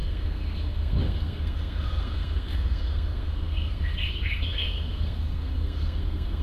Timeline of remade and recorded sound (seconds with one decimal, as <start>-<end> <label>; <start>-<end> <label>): 0.0-6.4 remade